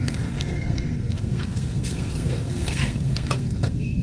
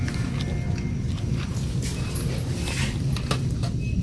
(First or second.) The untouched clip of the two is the second